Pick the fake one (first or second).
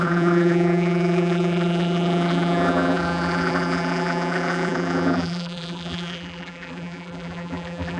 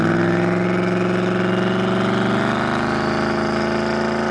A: first